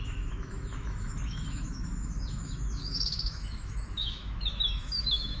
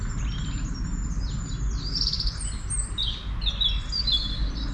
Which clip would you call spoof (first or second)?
first